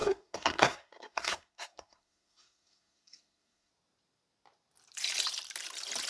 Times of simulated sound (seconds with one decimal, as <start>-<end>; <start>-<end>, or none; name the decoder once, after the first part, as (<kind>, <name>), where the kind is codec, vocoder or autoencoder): 0.0-3.7 (codec, SNAC)